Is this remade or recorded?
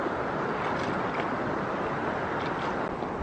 recorded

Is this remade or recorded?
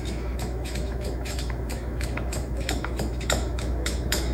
remade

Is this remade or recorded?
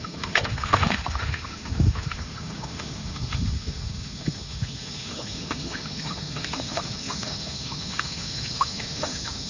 remade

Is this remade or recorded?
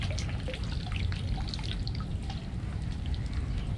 recorded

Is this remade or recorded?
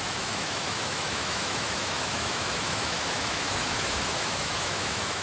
remade